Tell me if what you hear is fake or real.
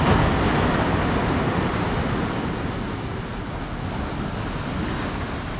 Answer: real